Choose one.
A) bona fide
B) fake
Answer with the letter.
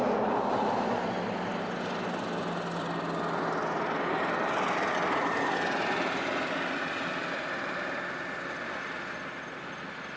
A